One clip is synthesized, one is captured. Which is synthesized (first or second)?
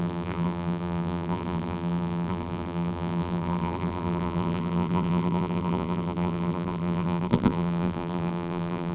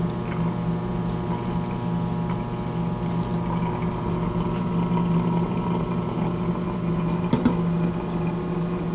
first